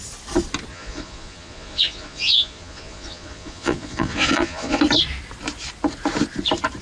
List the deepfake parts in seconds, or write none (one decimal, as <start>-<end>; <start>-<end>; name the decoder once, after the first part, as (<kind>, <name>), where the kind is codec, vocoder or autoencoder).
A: 0.7-4.8 (vocoder, Vocos)